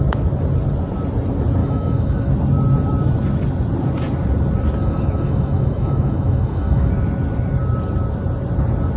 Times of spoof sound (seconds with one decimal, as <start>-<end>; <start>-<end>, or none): 1.6-2.3; 4.8-6.9